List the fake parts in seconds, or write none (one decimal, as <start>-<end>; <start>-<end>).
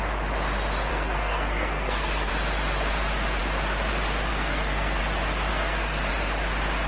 0.9-2.3; 4.3-5.0; 5.5-6.1